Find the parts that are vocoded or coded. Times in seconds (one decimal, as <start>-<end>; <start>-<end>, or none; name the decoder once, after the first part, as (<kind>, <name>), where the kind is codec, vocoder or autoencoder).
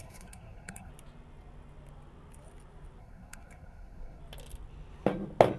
0.0-0.9 (codec, SNAC); 3.0-4.2